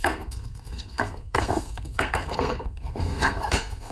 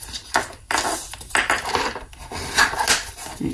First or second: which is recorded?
second